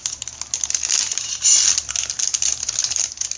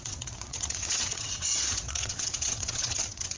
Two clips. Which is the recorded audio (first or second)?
first